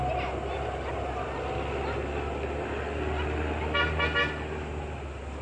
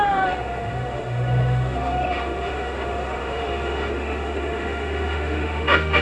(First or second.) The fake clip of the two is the second